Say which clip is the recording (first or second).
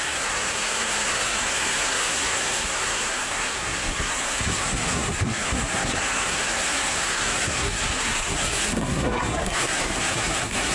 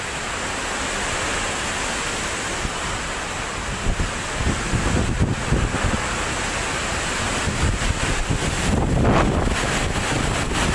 second